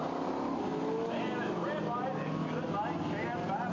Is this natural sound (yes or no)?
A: yes